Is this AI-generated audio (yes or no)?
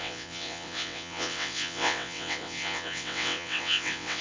yes